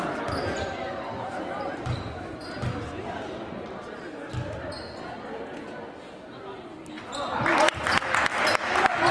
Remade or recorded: recorded